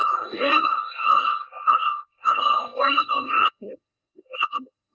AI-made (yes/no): yes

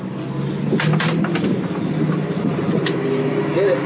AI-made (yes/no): no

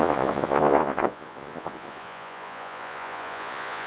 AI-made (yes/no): yes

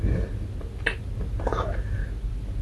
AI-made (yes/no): no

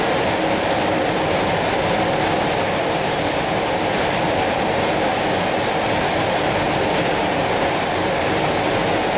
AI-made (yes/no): no